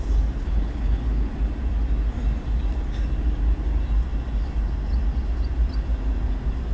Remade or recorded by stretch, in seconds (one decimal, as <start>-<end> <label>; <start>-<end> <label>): 0.0-0.4 recorded; 0.4-1.3 remade; 1.3-6.7 recorded